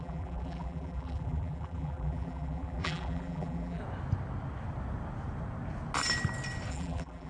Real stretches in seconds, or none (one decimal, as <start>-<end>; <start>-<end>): 3.8-6.7